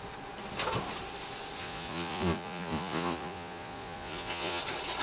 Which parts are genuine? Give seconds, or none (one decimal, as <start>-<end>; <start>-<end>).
0.0-1.6; 4.6-5.0